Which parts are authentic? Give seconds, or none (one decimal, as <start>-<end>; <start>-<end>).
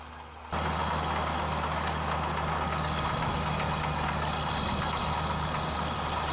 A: 0.0-6.3